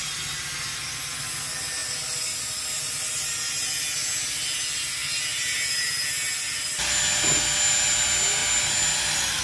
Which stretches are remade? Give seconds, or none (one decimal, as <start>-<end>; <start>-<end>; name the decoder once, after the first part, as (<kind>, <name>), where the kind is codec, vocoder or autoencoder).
none